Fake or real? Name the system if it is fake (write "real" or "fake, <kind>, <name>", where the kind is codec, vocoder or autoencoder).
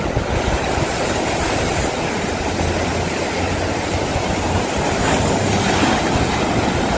real